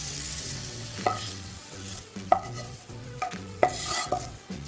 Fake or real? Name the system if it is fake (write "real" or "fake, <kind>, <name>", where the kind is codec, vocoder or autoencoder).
fake, vocoder, WaveNeXt